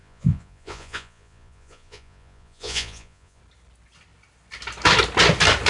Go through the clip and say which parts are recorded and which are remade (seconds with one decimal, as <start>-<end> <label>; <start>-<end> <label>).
0.0-3.4 remade; 3.4-5.7 recorded